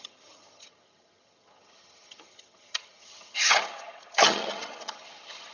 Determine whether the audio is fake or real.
fake